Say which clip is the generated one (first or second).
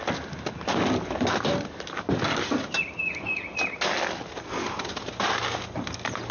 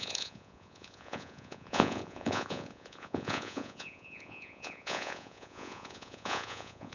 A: second